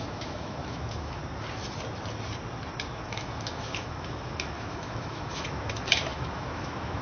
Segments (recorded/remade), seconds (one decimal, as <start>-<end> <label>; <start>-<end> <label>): 0.0-1.2 remade; 1.2-2.9 recorded; 2.9-7.0 remade